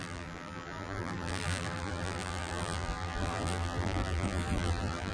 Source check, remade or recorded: remade